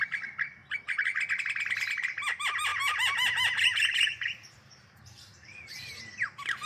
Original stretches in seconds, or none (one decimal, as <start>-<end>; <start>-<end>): 0.0-2.7; 6.0-6.7